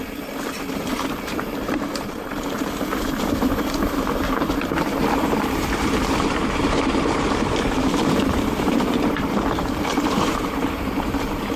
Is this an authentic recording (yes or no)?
no